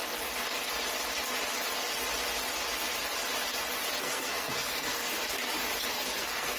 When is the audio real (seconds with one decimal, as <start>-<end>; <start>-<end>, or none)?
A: 0.0-4.0; 5.2-5.9